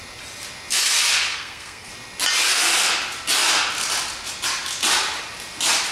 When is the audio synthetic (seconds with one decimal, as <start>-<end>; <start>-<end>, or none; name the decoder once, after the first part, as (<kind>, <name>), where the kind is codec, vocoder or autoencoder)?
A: 1.3-1.9 (codec, SNAC)